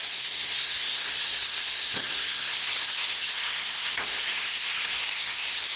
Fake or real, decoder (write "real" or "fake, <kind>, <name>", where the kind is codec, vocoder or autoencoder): fake, codec, SNAC